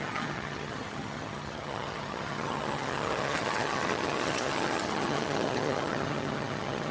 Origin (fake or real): fake